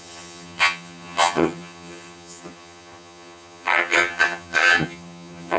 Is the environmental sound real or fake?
fake